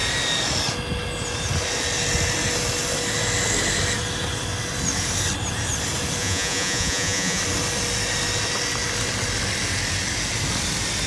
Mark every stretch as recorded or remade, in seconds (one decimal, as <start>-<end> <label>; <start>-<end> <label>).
0.0-6.2 recorded; 6.2-7.4 remade; 7.4-11.1 recorded